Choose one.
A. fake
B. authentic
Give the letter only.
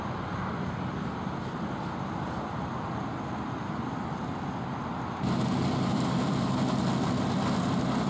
B